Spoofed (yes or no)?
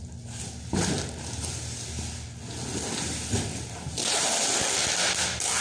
no